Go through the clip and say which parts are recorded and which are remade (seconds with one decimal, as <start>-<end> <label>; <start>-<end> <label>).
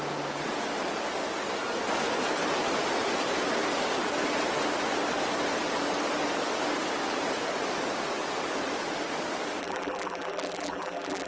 0.0-9.6 recorded; 9.6-11.3 remade